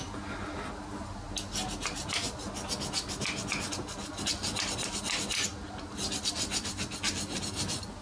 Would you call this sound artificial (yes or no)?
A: no